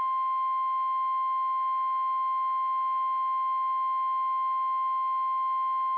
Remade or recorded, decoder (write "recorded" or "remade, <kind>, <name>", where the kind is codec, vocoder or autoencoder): recorded